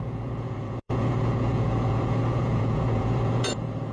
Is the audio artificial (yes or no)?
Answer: yes